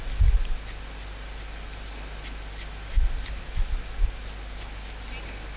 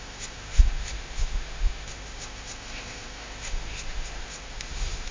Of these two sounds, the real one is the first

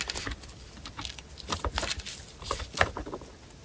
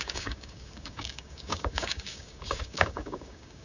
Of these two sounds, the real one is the first